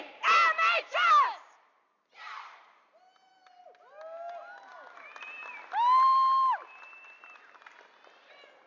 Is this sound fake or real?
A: real